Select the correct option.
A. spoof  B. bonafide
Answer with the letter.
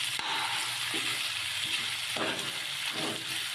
B